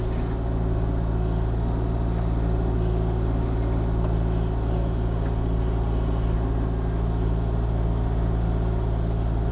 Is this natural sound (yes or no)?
yes